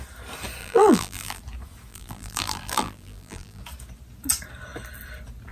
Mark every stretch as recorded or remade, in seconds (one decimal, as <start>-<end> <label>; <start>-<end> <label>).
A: 0.0-0.6 recorded; 0.6-1.4 remade; 1.4-1.9 recorded; 1.9-3.6 remade; 3.6-5.5 recorded